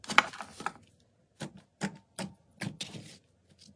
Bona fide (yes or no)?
yes